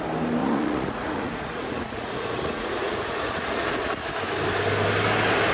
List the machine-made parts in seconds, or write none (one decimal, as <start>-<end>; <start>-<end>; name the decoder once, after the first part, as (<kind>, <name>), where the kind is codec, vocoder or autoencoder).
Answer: 0.4-3.7 (vocoder, Vocos)